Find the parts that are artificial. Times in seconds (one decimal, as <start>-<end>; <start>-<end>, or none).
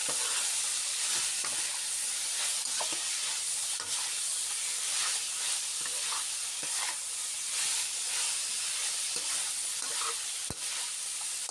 none